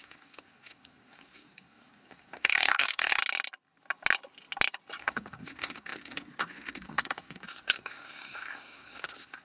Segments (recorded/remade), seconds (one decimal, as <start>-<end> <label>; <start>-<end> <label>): 0.0-3.2 remade; 3.2-5.0 recorded; 5.0-9.4 remade